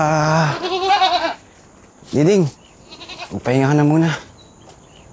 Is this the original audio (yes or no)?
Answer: yes